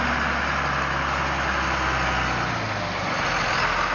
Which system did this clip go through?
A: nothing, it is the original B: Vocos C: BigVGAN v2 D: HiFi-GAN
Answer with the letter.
A